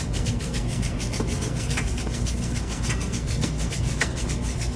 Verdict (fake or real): fake